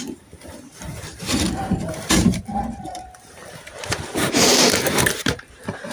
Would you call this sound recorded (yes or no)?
no